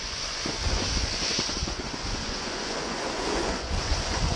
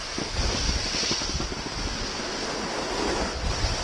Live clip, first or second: second